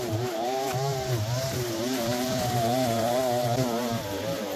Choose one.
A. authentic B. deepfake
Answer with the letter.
B